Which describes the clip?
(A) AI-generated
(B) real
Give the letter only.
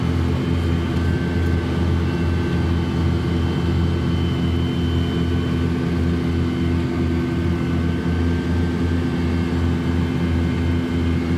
B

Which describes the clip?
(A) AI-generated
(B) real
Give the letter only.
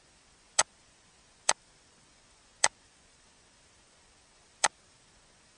A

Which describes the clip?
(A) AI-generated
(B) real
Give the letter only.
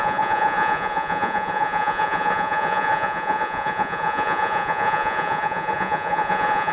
A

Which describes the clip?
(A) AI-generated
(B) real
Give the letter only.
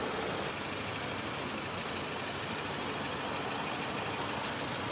B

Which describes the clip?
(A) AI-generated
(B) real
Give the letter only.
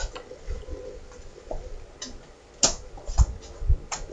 B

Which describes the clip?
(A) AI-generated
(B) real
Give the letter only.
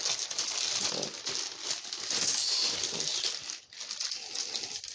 B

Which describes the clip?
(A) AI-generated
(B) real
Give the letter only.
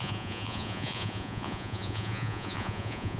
A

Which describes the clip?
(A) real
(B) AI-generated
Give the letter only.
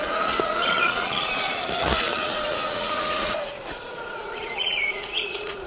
B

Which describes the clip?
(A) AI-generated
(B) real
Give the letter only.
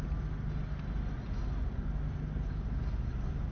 B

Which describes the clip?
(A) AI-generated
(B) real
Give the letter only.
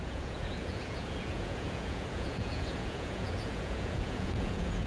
A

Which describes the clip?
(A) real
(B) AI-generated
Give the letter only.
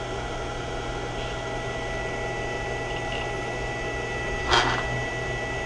A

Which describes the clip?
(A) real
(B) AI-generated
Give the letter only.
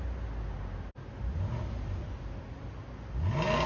A